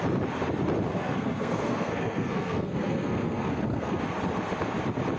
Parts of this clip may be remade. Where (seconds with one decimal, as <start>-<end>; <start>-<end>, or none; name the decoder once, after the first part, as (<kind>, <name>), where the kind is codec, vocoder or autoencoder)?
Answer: 0.9-4.0 (codec, SNAC)